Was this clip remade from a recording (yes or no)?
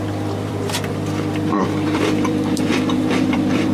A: yes